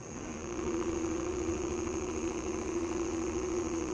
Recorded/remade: remade